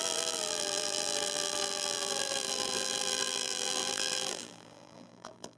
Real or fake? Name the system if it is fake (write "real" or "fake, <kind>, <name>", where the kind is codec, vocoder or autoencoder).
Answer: fake, vocoder, BigVGAN v2